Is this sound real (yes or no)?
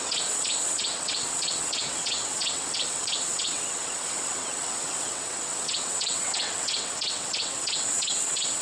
no